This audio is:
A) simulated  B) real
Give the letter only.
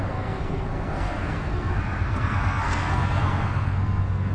A